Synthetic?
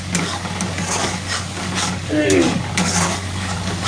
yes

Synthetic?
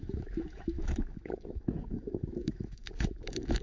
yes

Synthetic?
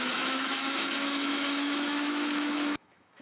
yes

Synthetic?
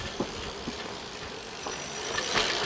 no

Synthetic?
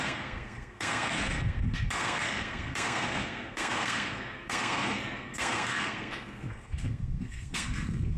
yes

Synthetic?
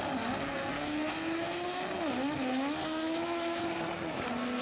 no